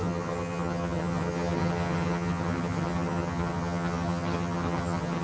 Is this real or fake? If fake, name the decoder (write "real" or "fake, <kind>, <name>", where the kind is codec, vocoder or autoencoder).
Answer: fake, vocoder, HiFi-GAN